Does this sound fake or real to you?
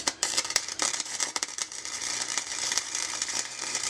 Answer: fake